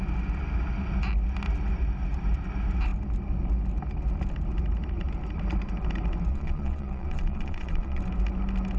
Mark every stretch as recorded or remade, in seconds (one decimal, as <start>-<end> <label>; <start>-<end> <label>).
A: 0.0-6.3 recorded; 6.3-8.0 remade; 8.0-8.8 recorded

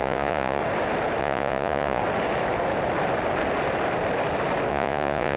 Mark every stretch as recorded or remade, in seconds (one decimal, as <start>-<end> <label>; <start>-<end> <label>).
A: 0.0-0.6 remade; 0.6-1.2 recorded; 1.2-2.0 remade; 2.0-4.7 recorded; 4.7-5.4 remade

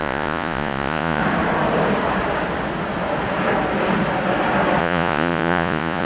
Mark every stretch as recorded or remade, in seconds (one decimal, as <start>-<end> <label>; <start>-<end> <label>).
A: 0.0-1.2 remade; 1.2-4.8 recorded; 4.8-6.0 remade

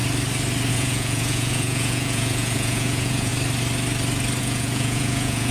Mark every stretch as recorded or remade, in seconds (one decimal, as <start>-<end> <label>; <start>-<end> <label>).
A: 0.0-0.7 recorded; 0.7-3.3 remade; 3.3-4.4 recorded; 4.4-5.5 remade

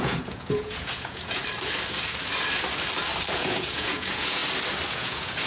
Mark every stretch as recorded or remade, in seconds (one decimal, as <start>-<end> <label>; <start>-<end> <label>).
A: 0.0-1.4 remade; 1.4-3.3 recorded; 3.3-4.4 remade; 4.4-4.9 recorded; 4.9-5.5 remade